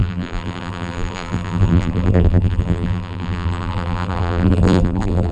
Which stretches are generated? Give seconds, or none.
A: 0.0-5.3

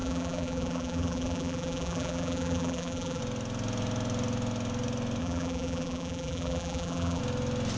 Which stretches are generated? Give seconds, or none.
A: 0.0-3.2; 5.2-7.2